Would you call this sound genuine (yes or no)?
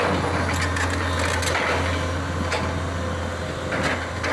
yes